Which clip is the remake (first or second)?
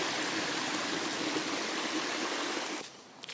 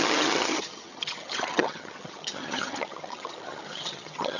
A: second